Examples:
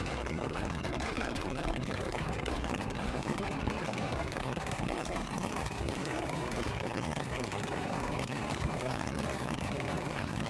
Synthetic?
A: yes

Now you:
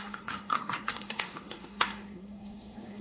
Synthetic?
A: yes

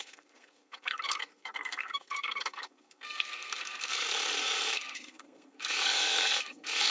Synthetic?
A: yes